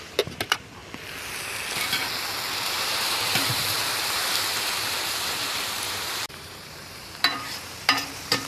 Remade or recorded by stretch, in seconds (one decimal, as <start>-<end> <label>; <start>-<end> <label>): 0.0-0.8 remade; 0.8-2.7 recorded; 2.7-8.5 remade